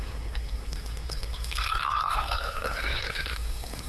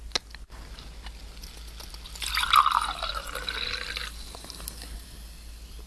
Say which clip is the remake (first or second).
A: first